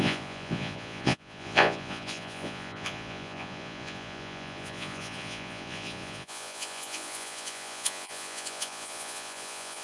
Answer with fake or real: fake